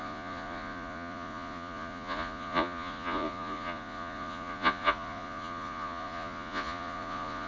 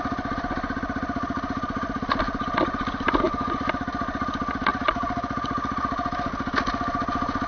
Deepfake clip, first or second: first